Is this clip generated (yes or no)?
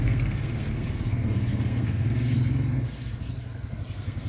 yes